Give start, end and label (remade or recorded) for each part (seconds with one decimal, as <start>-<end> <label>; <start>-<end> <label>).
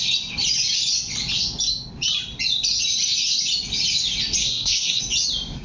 0.0-4.4 recorded; 4.4-5.0 remade; 5.0-5.6 recorded